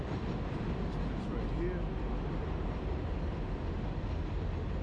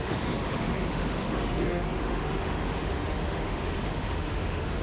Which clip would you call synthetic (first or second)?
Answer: second